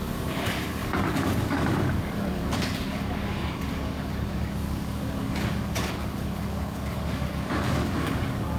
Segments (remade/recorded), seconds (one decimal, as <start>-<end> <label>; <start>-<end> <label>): 0.0-8.6 remade